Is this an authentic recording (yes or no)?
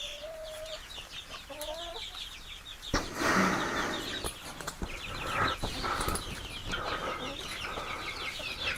no